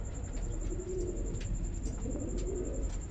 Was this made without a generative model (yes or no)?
yes